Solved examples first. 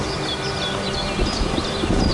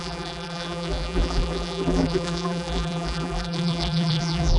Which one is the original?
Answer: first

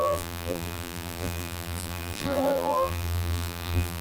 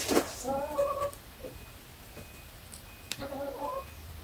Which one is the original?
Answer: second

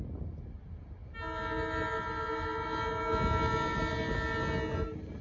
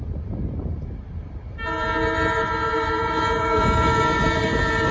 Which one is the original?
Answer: first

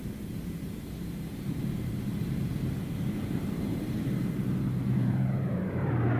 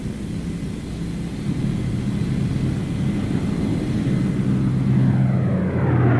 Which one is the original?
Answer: second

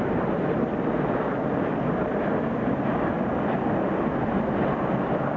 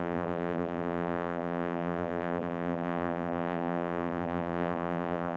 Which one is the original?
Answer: first